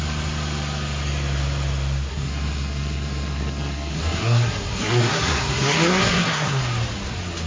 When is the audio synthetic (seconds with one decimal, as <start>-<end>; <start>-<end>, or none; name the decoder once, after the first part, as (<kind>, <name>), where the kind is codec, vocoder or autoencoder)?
2.1-6.6 (codec, SNAC)